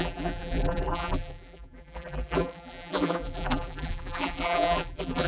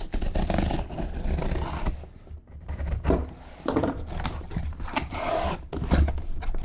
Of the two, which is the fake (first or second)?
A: first